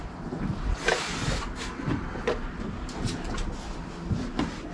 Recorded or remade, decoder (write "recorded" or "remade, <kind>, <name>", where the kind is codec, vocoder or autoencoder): recorded